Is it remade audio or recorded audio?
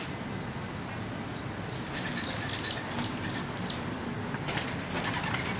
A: recorded